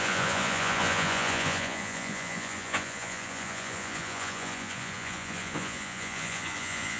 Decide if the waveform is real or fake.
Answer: fake